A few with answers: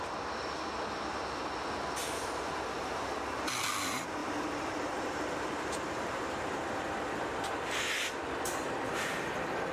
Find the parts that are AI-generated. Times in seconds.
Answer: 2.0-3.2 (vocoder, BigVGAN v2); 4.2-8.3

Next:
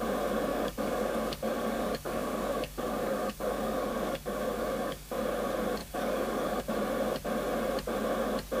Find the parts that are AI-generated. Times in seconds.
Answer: 0.5-5.2 (codec, DAC); 5.8-6.7

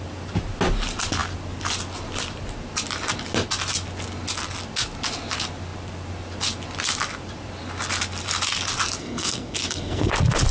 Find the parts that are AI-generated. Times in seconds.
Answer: 9.0-10.1 (codec, SNAC)

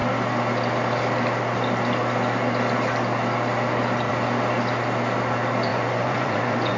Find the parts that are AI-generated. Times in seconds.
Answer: 5.7-6.8 (vocoder, Vocos)

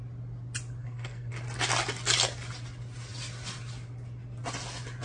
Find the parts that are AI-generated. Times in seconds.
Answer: 0.8-1.3 (codec, SNAC)

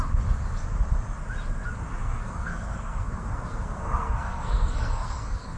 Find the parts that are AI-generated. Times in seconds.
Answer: 2.0-5.6 (codec, SNAC)